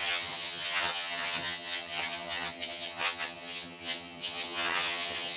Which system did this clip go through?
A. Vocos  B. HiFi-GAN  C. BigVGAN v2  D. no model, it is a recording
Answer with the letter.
B